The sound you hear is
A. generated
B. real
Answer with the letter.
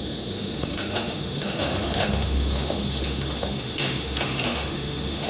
A